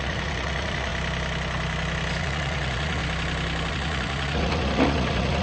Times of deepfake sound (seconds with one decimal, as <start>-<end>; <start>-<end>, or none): 0.0-0.9; 2.2-3.0; 3.7-5.4